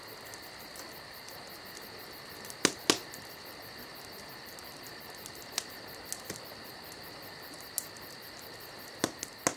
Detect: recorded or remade recorded